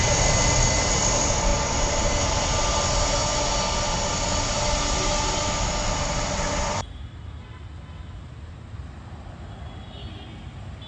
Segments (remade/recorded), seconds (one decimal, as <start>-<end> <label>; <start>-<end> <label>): 0.0-10.9 recorded